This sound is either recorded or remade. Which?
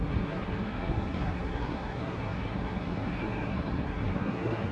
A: remade